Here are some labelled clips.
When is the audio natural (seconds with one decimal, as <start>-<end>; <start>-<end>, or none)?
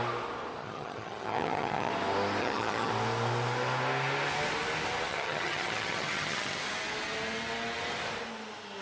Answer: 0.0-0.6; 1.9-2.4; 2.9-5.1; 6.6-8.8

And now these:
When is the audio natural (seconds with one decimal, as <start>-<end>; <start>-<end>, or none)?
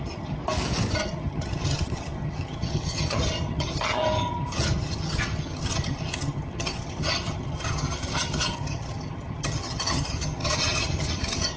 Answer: 0.4-0.9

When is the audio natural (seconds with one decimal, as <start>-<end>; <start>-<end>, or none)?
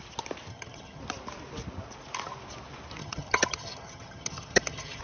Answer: 0.0-0.5; 1.0-3.0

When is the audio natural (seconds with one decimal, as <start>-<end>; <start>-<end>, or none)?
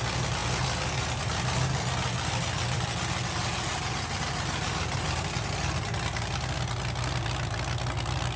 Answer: 0.0-8.4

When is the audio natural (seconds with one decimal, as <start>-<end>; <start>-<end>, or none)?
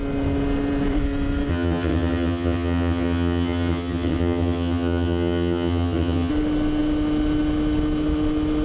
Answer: 0.0-1.5; 6.3-8.6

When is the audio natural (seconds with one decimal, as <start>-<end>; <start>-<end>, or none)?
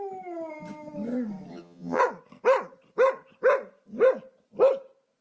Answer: 0.0-1.5; 2.0-5.2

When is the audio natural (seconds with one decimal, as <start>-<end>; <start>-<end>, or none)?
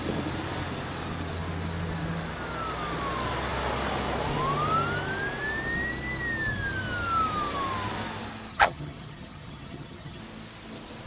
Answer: 0.0-8.5; 10.2-11.1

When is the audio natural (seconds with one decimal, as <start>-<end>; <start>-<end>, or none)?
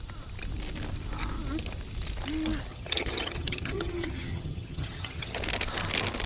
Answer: 0.0-2.7; 5.4-6.3